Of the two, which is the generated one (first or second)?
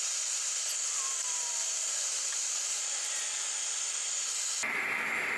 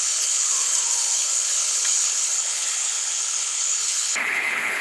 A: second